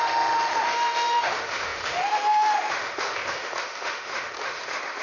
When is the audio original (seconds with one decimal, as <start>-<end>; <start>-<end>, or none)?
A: none